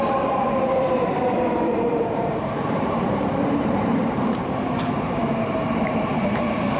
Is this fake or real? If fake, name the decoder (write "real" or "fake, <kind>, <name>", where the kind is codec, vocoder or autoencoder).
fake, vocoder, BigVGAN v2